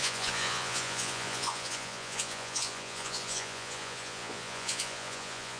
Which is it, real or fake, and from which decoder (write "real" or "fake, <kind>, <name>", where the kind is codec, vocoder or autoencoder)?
fake, vocoder, Vocos